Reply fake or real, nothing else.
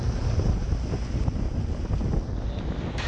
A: real